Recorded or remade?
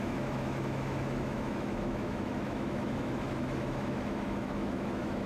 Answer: remade